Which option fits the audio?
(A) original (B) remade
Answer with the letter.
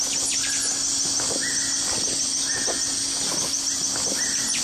A